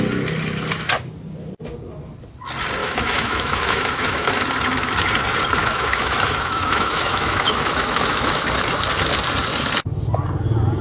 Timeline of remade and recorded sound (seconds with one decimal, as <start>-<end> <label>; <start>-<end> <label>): 0.0-2.8 recorded; 2.8-4.3 remade; 4.3-5.6 recorded; 5.6-8.4 remade; 8.4-10.8 recorded